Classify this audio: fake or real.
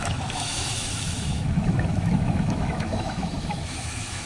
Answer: fake